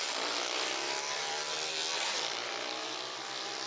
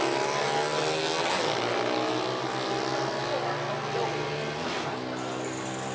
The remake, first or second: first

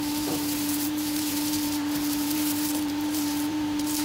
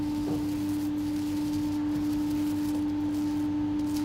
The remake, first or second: first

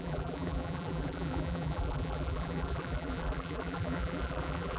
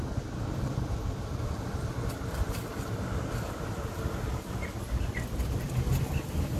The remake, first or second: first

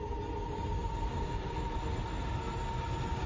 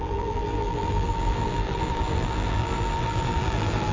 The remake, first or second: second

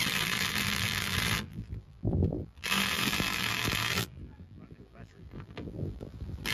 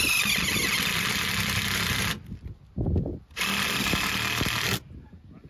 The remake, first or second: first